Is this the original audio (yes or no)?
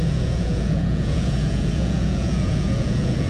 no